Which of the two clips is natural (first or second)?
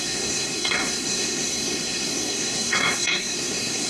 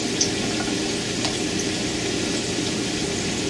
second